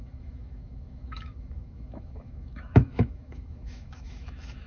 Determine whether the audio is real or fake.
fake